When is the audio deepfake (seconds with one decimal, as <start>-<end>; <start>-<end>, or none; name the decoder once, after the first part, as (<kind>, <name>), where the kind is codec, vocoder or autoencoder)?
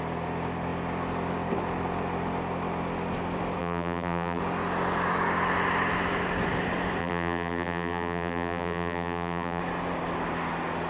3.6-4.4 (vocoder, BigVGAN v2); 7.0-9.6